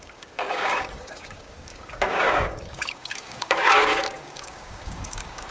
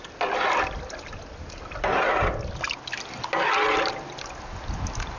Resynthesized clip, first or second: first